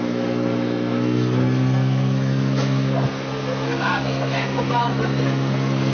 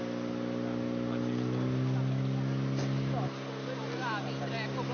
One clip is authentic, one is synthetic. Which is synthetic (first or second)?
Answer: first